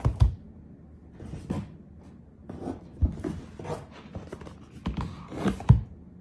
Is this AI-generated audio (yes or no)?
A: no